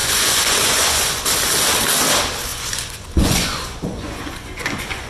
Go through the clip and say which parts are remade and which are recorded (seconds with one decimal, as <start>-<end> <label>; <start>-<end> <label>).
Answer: 0.0-1.2 remade; 1.2-2.5 recorded; 2.5-5.1 remade